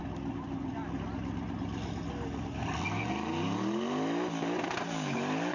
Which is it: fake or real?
real